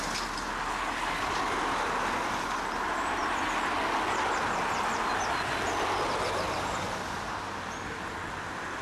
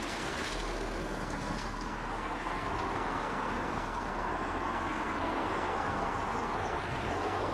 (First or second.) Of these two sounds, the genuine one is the first